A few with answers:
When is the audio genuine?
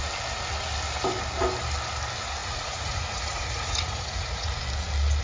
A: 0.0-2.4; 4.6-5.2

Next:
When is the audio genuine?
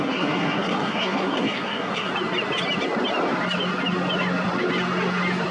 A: 2.1-5.5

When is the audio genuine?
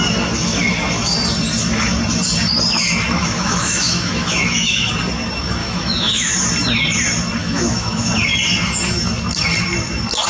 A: 0.0-3.2; 4.9-5.6; 6.3-7.4; 8.1-10.3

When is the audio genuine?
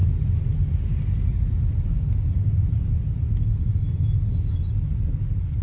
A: 0.0-5.6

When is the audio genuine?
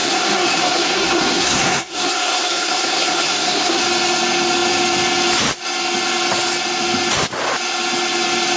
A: 3.8-8.6